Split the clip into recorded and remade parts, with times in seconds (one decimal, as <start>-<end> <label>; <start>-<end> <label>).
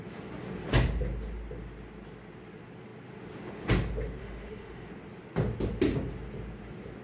0.0-4.2 recorded; 4.2-4.9 remade; 4.9-7.0 recorded